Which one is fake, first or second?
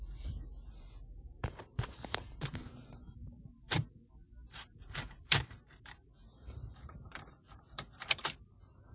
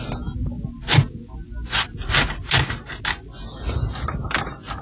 first